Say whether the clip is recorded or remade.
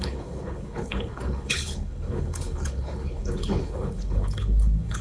remade